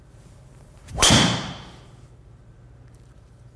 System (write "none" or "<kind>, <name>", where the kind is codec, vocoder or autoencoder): vocoder, BigVGAN v2